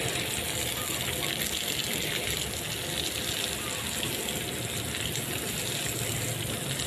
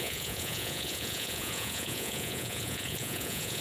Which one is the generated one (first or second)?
second